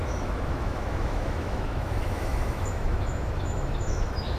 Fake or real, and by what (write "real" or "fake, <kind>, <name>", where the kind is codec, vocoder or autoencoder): fake, autoencoder, DAC-VAE